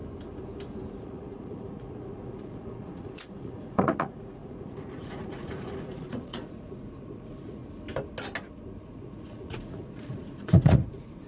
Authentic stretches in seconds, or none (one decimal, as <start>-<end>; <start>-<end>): 0.0-1.0; 7.6-8.8